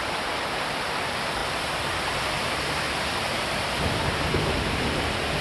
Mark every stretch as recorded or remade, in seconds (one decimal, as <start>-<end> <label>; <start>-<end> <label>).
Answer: 0.0-5.4 remade